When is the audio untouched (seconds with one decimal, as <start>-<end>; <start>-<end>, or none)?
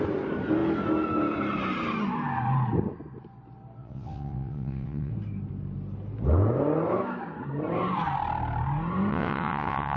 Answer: 0.0-3.8; 5.1-9.1